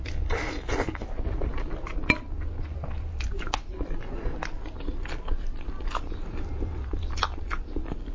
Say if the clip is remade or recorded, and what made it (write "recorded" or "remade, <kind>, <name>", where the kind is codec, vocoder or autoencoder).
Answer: recorded